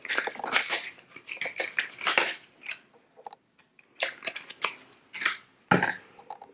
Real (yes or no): yes